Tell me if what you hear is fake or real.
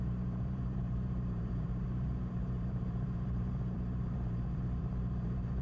fake